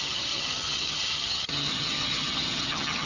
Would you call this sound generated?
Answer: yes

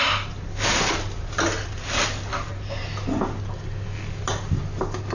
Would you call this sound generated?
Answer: no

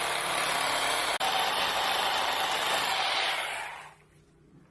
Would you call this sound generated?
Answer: no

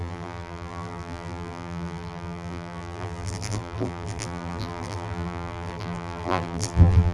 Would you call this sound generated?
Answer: yes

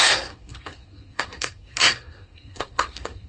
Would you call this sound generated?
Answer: yes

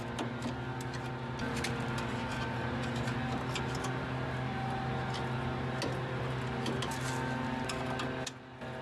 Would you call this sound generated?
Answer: no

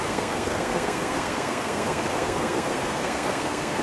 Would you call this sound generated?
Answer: yes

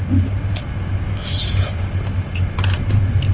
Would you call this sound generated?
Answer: no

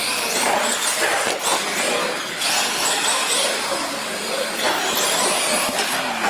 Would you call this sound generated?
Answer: no